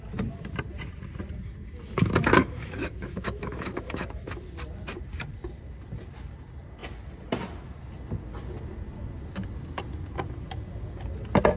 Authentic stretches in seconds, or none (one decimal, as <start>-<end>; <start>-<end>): 0.0-2.4; 4.4-11.6